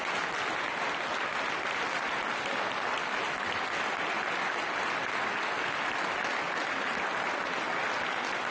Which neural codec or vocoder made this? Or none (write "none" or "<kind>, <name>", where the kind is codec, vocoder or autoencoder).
none